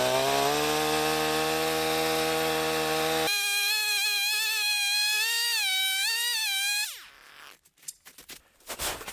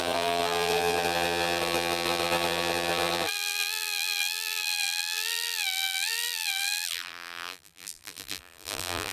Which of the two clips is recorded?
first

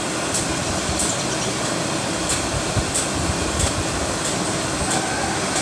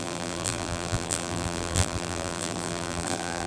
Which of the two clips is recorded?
first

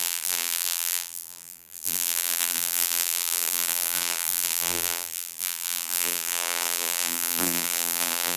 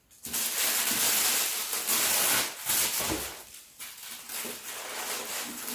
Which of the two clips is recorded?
second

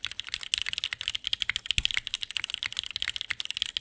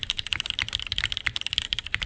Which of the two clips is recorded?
first